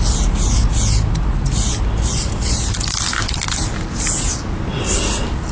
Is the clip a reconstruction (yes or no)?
no